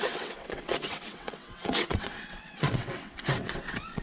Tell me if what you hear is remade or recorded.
remade